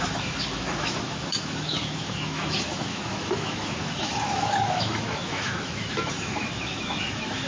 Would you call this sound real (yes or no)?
no